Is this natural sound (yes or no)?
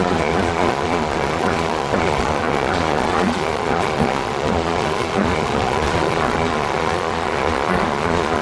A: no